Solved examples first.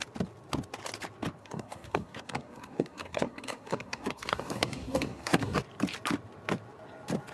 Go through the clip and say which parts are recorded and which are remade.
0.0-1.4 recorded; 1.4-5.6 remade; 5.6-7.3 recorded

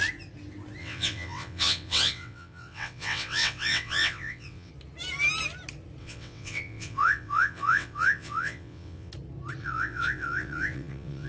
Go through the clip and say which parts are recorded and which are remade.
0.0-0.8 recorded; 0.8-4.7 remade; 4.7-6.0 recorded; 6.0-9.1 remade; 9.1-9.6 recorded; 9.6-11.3 remade

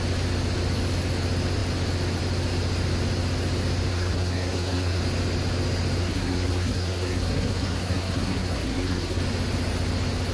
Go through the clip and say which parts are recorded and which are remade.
0.0-3.9 recorded; 3.9-5.0 remade; 5.0-6.0 recorded; 6.0-9.2 remade; 9.2-10.3 recorded

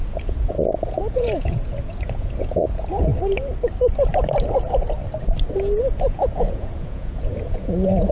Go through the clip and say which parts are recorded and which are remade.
0.0-3.1 remade; 3.1-5.8 recorded; 5.8-8.1 remade

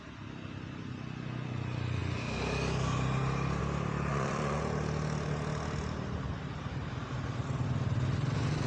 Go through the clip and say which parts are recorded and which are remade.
0.0-4.1 recorded; 4.1-4.6 remade; 4.6-8.7 recorded

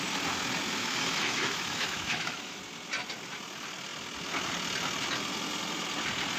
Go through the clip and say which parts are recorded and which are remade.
0.0-0.8 recorded; 0.8-2.6 remade; 2.6-6.4 recorded